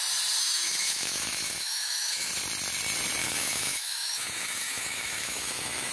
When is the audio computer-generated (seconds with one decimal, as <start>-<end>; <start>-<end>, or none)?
0.4-2.3; 3.2-5.9